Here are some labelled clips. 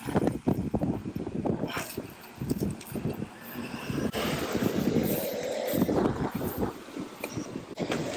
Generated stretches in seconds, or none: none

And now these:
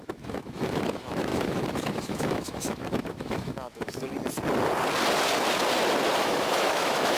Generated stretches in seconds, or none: 0.0-4.1; 6.2-7.2